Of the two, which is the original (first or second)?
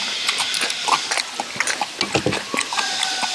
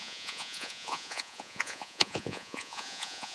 first